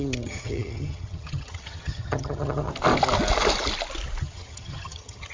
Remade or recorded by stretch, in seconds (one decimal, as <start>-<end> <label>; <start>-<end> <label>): 0.0-2.7 remade; 2.7-4.2 recorded; 4.2-5.3 remade